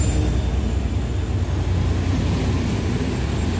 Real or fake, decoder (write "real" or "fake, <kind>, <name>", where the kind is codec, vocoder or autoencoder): real